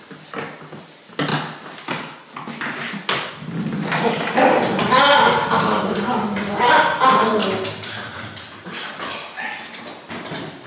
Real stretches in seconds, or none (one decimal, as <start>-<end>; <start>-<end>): 0.0-10.7